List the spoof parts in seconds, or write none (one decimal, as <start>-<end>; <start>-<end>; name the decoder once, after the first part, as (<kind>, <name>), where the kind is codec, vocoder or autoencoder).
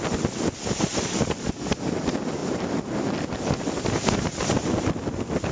none